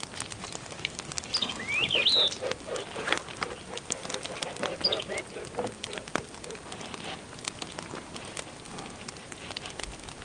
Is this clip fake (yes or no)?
no